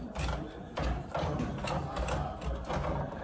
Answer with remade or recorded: recorded